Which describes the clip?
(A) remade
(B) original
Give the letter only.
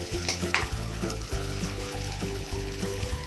A